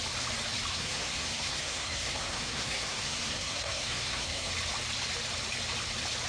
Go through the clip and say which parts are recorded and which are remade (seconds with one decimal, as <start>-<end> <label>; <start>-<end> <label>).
0.0-0.7 recorded; 0.7-4.5 remade; 4.5-6.3 recorded